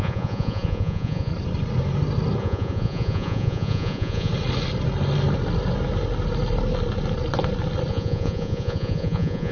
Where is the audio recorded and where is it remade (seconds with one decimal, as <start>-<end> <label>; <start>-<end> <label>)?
0.0-1.3 remade; 1.3-2.4 recorded; 2.4-4.3 remade; 4.3-7.9 recorded; 7.9-9.5 remade